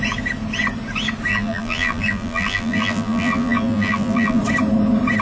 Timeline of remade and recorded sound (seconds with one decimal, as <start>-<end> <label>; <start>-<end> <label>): 0.0-1.3 recorded; 1.3-4.4 remade; 4.4-5.2 recorded